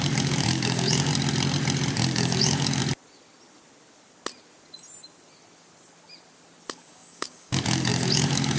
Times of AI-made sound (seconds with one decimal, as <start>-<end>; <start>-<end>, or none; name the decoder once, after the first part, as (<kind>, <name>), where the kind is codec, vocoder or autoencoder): 0.0-1.1 (codec, DAC); 1.9-2.8; 6.7-8.6